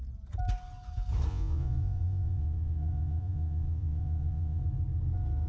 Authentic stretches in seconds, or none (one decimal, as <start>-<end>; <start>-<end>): 0.0-1.3; 4.6-5.5